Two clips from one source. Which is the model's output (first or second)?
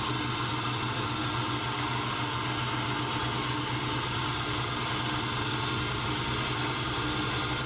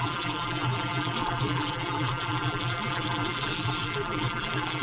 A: second